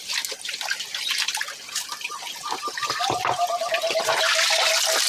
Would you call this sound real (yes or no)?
yes